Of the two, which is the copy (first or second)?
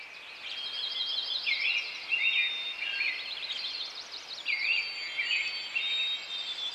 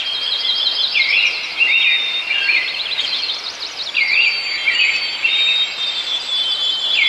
second